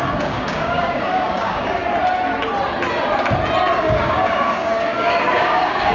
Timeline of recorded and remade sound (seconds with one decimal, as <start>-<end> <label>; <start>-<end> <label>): 0.0-1.8 remade; 1.8-3.8 recorded; 3.8-5.9 remade